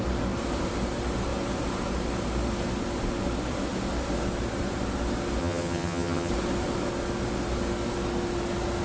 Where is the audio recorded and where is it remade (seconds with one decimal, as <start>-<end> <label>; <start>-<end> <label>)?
0.0-5.4 recorded; 5.4-6.3 remade; 6.3-8.8 recorded